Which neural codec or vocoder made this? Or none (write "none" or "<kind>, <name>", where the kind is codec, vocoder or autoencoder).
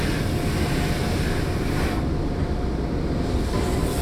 none